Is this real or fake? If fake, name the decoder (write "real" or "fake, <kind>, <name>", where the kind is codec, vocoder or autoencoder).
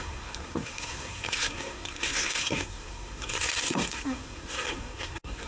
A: fake, codec, SNAC